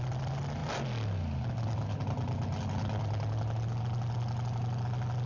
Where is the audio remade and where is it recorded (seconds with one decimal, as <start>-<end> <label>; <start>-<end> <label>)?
0.0-5.3 recorded

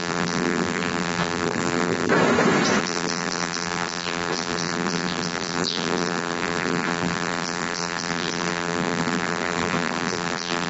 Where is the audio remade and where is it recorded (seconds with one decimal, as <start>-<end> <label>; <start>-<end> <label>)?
0.0-2.1 remade; 2.1-2.8 recorded; 2.8-10.7 remade

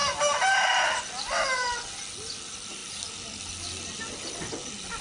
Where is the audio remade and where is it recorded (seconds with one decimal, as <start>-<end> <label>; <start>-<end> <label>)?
0.0-5.0 recorded

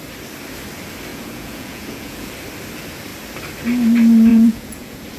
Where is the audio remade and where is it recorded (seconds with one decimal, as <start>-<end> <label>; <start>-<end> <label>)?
0.0-1.1 recorded; 1.1-2.3 remade; 2.3-4.3 recorded; 4.3-5.2 remade

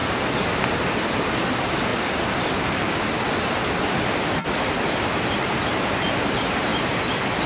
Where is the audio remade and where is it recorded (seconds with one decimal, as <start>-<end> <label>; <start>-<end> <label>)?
0.0-6.7 remade; 6.7-7.5 recorded

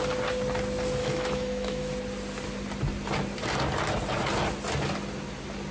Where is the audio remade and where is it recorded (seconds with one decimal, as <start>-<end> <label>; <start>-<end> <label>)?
0.0-1.0 recorded; 1.0-1.9 remade; 1.9-5.7 recorded

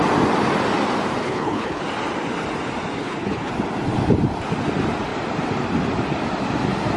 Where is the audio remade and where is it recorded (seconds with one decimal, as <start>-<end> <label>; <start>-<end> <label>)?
0.0-1.2 recorded; 1.2-1.8 remade; 1.8-3.0 recorded; 3.0-3.5 remade; 3.5-7.0 recorded